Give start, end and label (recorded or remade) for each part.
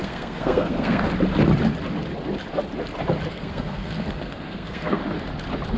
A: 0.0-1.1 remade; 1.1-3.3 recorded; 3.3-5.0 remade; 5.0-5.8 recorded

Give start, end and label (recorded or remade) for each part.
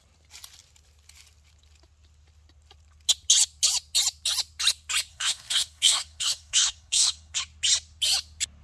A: 0.0-5.1 recorded; 5.1-7.4 remade; 7.4-8.6 recorded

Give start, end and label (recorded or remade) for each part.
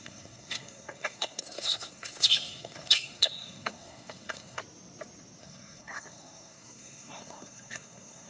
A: 0.0-4.6 remade; 4.6-5.4 recorded; 5.4-8.3 remade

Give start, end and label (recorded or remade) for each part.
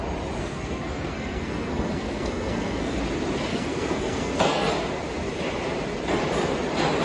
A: 0.0-0.4 recorded; 0.4-3.0 remade; 3.0-3.5 recorded; 3.5-4.7 remade; 4.7-7.0 recorded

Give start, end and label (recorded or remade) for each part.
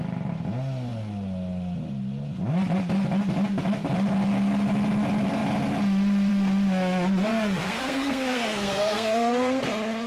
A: 0.0-7.3 recorded; 7.3-9.6 remade; 9.6-10.1 recorded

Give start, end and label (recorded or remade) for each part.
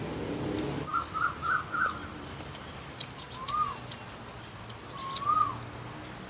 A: 0.0-6.3 recorded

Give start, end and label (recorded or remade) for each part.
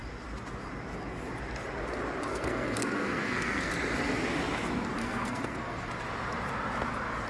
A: 0.0-2.3 recorded; 2.3-3.7 remade; 3.7-5.0 recorded; 5.0-5.9 remade; 5.9-7.3 recorded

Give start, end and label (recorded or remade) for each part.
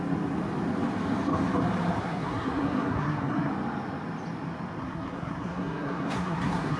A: 0.0-2.0 recorded; 2.0-3.5 remade; 3.5-4.8 recorded; 4.8-6.8 remade